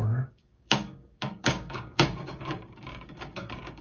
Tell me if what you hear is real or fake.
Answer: fake